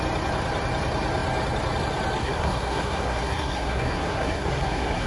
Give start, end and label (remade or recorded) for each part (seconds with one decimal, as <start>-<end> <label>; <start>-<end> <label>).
0.0-2.2 recorded; 2.2-5.1 remade